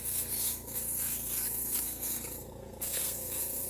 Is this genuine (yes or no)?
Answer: no